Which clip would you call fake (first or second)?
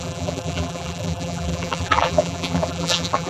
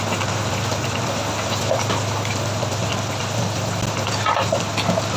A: first